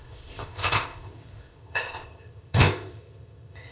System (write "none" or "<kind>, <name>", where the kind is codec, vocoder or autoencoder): codec, ZipCodec